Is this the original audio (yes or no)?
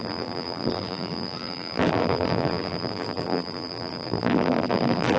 no